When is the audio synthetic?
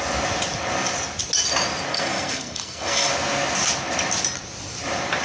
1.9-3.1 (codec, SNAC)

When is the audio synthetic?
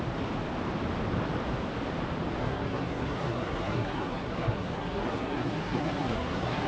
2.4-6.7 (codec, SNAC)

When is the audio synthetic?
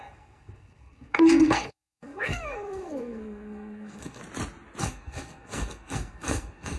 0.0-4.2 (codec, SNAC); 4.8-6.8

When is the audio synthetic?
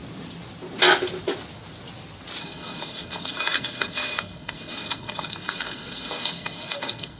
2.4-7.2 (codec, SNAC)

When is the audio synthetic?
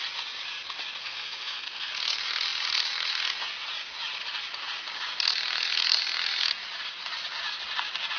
1.0-1.9 (codec, SNAC)